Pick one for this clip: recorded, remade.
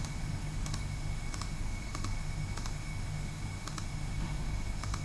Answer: remade